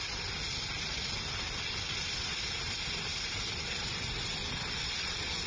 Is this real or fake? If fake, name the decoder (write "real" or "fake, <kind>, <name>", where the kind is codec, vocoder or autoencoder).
fake, vocoder, BigVGAN v2